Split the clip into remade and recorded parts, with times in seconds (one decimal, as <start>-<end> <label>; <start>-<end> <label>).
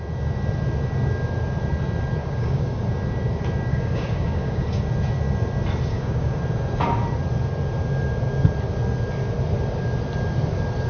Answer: 0.0-2.2 recorded; 2.2-2.8 remade; 2.8-3.7 recorded; 3.7-4.8 remade; 4.8-5.9 recorded; 5.9-6.4 remade; 6.4-10.9 recorded